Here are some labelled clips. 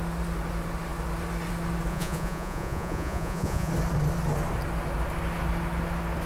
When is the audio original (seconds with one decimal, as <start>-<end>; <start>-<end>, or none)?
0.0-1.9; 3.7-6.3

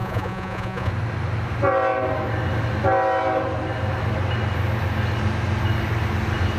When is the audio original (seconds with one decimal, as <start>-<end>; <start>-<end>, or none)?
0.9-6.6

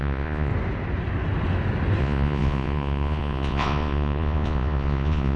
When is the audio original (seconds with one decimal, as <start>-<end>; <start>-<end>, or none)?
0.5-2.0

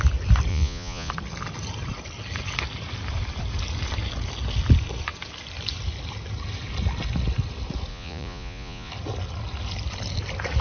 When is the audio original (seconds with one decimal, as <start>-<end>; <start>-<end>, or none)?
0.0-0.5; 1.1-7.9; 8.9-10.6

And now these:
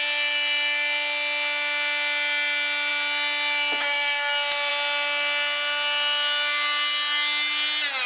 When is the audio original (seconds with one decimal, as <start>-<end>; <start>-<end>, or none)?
0.0-8.1